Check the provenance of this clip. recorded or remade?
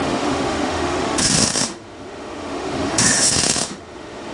remade